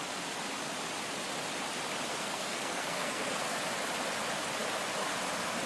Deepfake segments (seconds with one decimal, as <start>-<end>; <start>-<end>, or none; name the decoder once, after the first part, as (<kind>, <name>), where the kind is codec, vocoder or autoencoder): 2.1-3.6 (codec, SNAC)